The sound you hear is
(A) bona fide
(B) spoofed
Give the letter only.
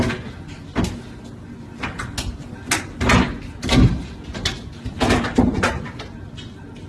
A